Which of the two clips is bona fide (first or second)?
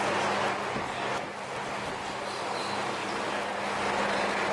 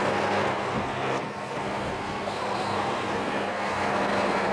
first